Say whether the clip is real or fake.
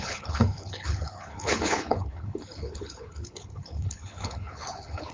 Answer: fake